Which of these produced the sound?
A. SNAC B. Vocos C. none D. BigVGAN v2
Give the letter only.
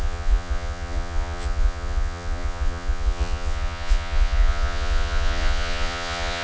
B